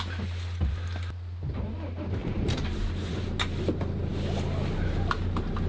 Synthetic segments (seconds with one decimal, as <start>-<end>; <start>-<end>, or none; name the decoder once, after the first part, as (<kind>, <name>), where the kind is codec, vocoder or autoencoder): 2.2-3.1 (vocoder, BigVGAN v2)